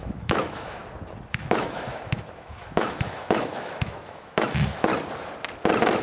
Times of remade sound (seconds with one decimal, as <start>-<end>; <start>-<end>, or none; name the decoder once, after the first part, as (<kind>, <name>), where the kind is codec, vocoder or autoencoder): 0.0-0.8 (autoencoder, DAC-VAE); 1.3-4.9